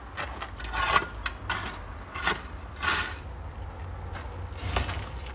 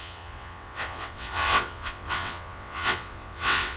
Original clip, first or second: first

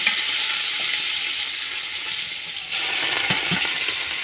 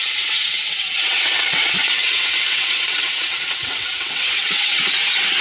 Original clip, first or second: first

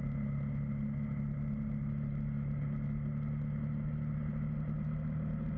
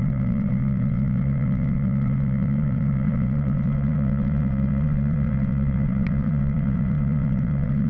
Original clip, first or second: first